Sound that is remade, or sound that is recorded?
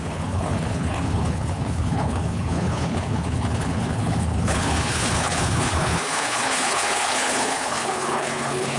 remade